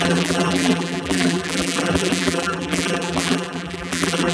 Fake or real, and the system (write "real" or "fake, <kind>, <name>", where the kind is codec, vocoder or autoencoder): fake, vocoder, BigVGAN v2